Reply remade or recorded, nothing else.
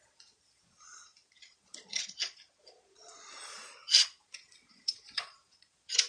remade